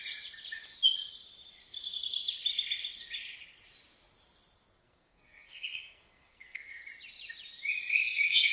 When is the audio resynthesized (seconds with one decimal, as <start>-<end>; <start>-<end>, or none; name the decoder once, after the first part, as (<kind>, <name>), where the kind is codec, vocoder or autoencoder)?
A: 4.8-6.8 (codec, SNAC); 7.9-8.5